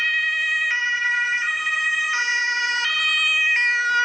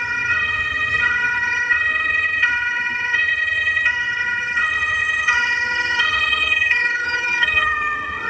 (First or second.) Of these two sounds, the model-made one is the second